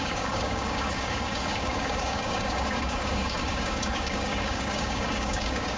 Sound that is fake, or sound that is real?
fake